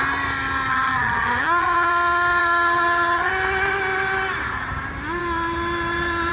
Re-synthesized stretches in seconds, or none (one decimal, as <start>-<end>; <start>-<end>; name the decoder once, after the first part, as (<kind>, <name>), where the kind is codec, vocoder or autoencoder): 0.7-1.9 (vocoder, HiFi-GAN); 2.4-3.3

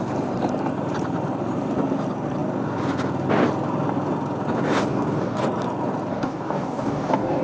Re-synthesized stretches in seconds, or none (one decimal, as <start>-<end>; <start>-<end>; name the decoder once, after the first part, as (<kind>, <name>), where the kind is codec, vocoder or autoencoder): 4.9-5.4 (codec, DAC); 6.1-7.4

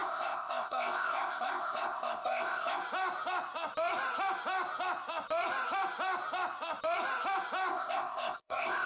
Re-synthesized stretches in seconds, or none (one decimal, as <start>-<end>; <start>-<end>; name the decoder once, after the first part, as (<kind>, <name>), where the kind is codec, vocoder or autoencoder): 0.0-2.8 (codec, ZipCodec); 7.7-8.9

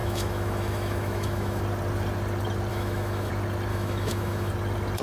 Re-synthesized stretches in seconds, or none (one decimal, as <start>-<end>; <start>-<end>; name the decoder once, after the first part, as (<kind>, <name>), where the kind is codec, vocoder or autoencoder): 0.0-1.6 (autoencoder, DAC-VAE); 2.7-3.3; 3.7-4.5

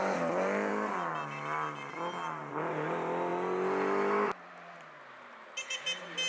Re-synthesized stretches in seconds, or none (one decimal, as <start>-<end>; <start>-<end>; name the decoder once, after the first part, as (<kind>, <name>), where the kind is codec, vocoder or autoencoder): none